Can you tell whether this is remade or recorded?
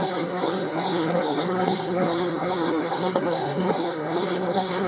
remade